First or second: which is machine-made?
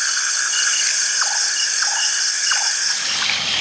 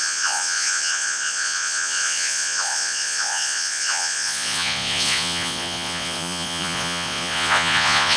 second